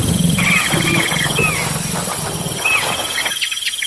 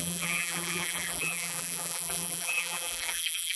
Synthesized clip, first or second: second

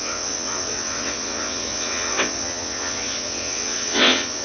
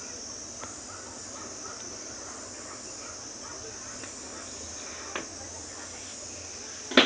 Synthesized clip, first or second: first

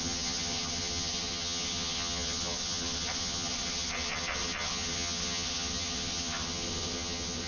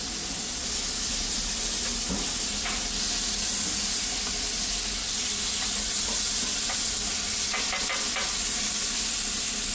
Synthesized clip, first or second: first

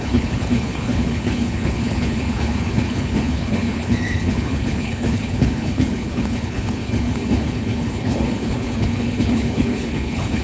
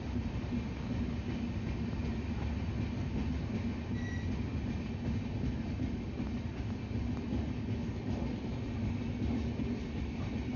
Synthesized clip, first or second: first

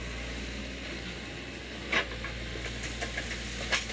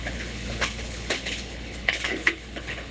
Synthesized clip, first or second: second